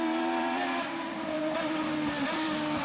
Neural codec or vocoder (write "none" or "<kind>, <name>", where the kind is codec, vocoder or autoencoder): vocoder, BigVGAN v2